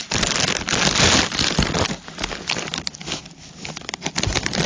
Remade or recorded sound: recorded